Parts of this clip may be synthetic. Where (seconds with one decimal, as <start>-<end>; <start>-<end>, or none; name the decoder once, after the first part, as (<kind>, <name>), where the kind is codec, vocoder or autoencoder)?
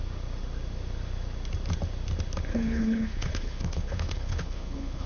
2.5-5.1 (codec, HILCodec)